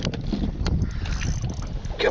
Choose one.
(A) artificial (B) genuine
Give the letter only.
B